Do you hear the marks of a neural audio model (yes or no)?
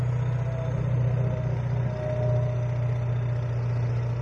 no